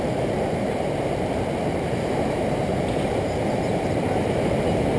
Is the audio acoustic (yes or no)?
no